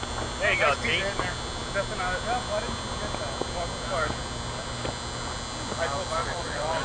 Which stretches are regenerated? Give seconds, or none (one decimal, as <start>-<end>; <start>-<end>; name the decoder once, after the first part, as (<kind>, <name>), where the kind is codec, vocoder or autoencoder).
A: 6.2-6.8 (vocoder, BigVGAN v2)